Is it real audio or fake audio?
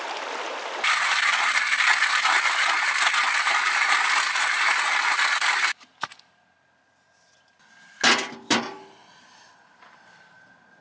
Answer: real